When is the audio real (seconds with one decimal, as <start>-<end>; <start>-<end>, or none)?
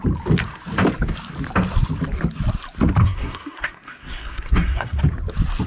0.0-3.0; 5.0-5.7